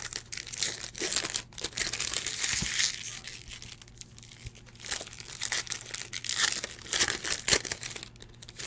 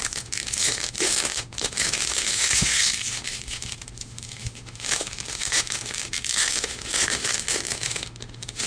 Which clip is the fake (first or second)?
second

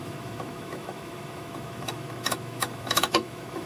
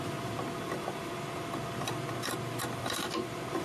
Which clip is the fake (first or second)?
first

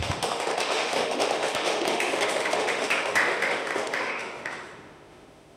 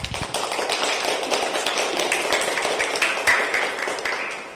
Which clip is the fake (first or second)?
first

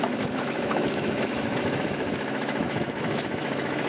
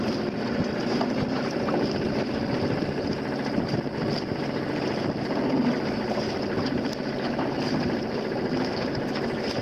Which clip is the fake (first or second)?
first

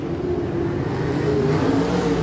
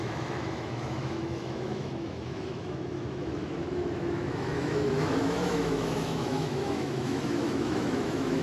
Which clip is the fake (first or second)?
second